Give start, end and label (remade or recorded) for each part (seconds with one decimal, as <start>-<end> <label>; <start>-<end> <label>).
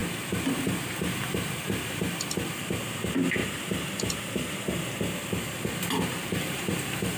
0.0-6.1 recorded; 6.1-6.7 remade; 6.7-7.2 recorded